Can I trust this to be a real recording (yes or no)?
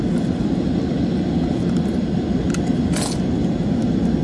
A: yes